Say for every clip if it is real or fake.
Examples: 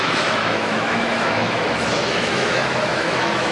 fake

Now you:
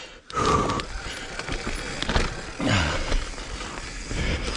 real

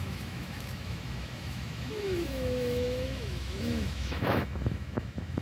fake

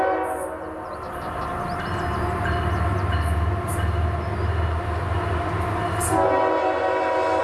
real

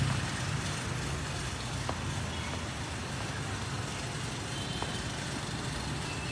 real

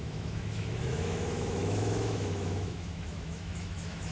fake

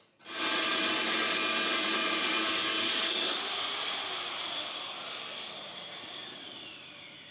real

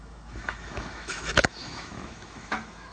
fake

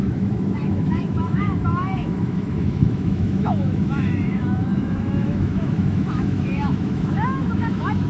fake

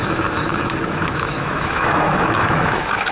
fake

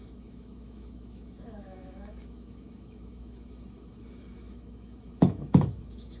fake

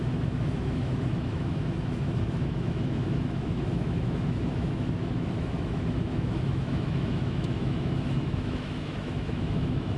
fake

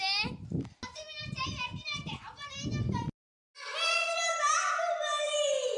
real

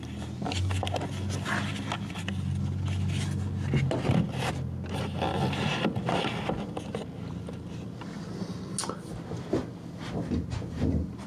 real